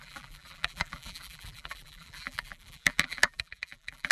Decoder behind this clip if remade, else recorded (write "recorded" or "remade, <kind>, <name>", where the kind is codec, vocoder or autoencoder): remade, vocoder, BigVGAN v2